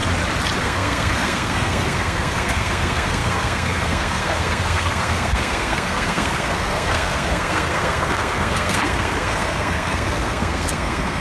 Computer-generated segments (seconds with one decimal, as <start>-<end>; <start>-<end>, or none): 0.6-11.2